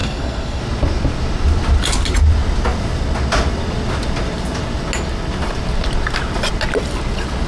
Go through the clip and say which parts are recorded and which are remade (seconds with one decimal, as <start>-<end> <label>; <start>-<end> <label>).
0.0-0.6 remade; 0.6-7.5 recorded